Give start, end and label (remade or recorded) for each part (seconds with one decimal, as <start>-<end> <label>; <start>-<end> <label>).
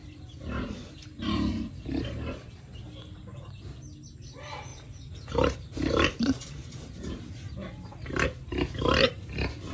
0.0-1.5 remade; 1.5-4.7 recorded; 4.7-7.2 remade; 7.2-9.7 recorded